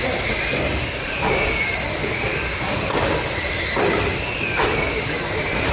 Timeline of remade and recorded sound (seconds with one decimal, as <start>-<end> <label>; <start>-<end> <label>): 0.0-2.0 remade; 2.0-5.2 recorded; 5.2-5.7 remade